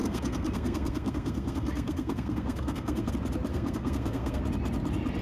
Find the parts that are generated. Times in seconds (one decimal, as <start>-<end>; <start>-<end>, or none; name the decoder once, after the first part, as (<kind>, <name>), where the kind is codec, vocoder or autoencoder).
0.0-3.1 (codec, SNAC); 3.5-4.4